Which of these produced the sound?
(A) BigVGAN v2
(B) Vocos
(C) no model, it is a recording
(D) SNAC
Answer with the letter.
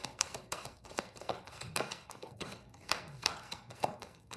D